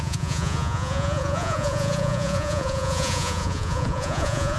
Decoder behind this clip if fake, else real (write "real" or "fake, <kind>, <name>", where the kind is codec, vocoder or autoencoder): fake, vocoder, Vocos